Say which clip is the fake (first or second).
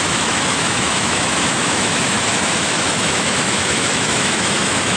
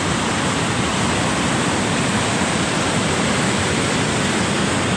first